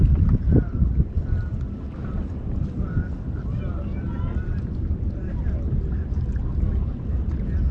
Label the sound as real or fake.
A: real